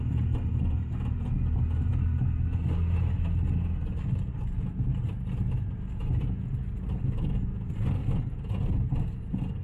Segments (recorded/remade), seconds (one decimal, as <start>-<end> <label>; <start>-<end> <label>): 0.0-9.6 recorded